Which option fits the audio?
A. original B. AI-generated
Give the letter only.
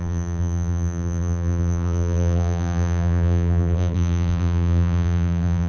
B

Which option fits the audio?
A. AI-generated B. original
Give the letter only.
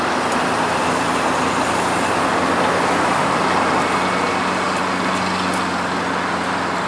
B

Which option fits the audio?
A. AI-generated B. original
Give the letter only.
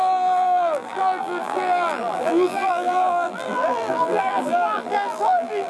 A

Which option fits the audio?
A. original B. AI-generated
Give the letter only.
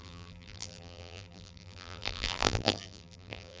B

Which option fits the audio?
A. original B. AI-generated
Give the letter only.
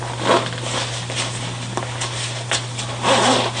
A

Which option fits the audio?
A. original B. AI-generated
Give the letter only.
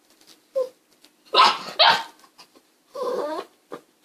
A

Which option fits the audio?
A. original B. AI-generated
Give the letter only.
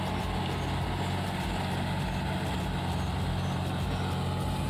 A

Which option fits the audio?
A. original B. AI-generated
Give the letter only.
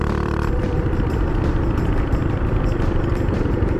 B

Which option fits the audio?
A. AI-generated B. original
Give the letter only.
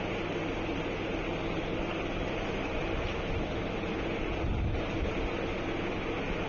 B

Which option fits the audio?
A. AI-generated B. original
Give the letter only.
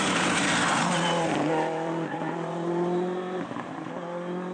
A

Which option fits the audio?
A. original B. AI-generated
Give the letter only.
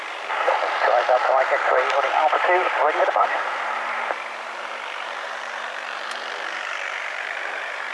B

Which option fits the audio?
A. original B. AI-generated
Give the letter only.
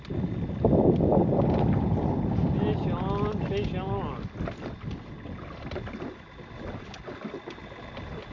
A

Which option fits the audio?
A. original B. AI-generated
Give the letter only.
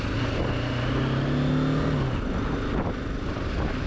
A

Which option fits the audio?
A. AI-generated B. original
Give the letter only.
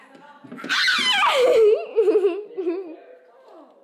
B